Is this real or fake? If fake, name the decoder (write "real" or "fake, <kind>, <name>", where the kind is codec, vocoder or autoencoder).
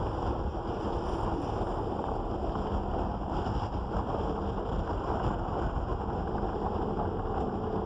real